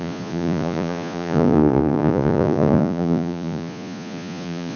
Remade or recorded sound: remade